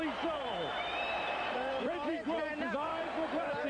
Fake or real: fake